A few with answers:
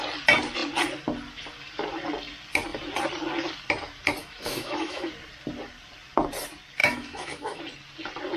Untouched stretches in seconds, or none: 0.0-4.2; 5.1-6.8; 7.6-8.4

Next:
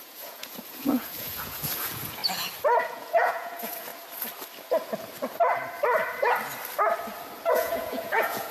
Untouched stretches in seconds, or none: 2.2-2.9; 3.9-7.5

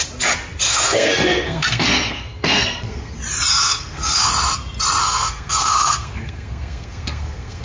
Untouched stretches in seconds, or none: 0.0-0.7; 3.1-3.5; 4.3-5.0

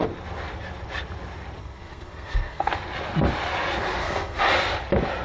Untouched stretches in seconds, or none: 0.0-1.6; 2.7-4.0; 4.5-5.2

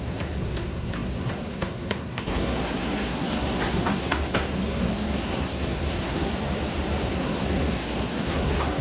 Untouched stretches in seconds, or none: 6.3-7.0

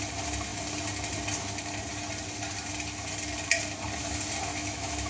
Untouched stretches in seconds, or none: 0.0-4.5